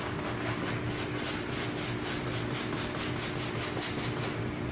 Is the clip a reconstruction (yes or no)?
no